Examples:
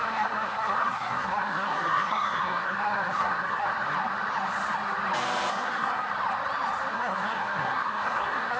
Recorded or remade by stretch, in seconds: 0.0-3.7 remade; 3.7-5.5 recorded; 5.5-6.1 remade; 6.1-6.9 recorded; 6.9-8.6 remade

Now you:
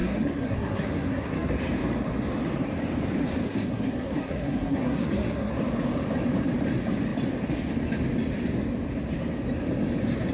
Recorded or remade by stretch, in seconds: 0.0-1.6 remade; 1.6-3.4 recorded; 3.4-5.5 remade; 5.5-10.3 recorded

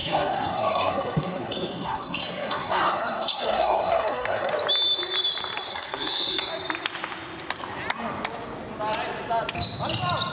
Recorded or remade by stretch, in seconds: 0.0-4.5 remade; 4.5-5.7 recorded; 5.7-6.5 remade; 6.5-10.3 recorded

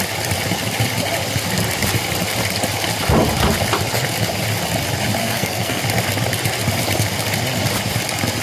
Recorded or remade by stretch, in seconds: 0.0-5.2 recorded; 5.2-5.8 remade; 5.8-8.4 recorded

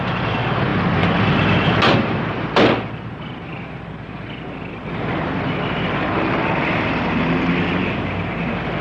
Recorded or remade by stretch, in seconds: 0.0-8.8 recorded

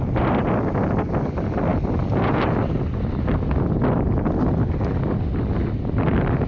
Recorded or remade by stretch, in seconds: 0.0-6.5 recorded